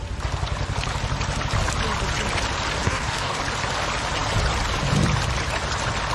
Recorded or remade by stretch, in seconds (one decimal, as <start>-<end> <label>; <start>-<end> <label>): 0.0-2.8 recorded; 2.8-3.4 remade; 3.4-6.1 recorded